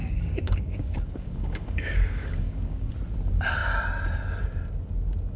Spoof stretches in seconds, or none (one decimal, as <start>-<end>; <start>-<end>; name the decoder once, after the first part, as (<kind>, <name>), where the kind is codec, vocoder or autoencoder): 0.0-2.9 (codec, DAC)